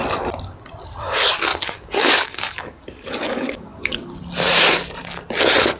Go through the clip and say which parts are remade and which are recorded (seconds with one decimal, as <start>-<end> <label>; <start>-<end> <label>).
0.0-1.5 recorded; 1.5-4.2 remade; 4.2-5.8 recorded